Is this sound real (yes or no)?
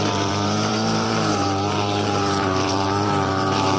no